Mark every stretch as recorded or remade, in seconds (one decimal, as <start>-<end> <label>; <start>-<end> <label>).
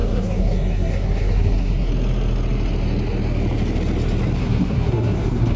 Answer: 0.0-1.9 remade; 1.9-4.4 recorded; 4.4-5.6 remade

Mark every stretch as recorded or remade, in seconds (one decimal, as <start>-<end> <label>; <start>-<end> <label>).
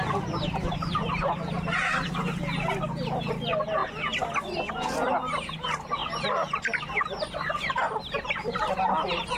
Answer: 0.0-9.4 recorded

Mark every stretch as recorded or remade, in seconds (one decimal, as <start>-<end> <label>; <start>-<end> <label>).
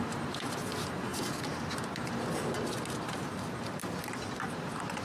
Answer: 0.0-5.0 recorded